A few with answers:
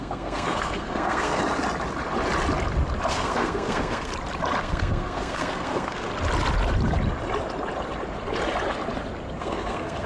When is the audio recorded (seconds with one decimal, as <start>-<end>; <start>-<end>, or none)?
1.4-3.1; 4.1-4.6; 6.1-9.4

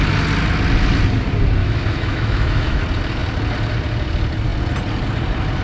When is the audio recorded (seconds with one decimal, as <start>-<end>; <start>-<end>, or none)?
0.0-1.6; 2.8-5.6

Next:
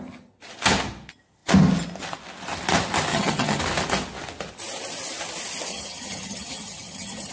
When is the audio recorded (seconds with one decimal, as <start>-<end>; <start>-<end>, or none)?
0.0-3.1; 3.6-5.7

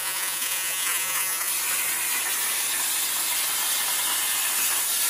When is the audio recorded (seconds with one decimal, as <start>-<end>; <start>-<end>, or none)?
1.5-5.1

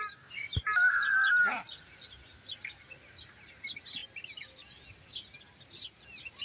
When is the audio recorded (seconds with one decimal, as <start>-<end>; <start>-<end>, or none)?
0.0-6.4

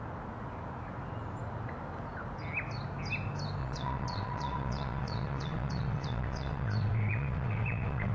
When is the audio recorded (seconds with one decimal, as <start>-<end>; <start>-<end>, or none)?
0.0-3.6